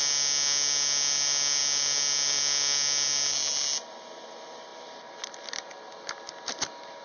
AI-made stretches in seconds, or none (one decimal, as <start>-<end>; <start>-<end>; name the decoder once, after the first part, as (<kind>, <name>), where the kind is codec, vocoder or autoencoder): none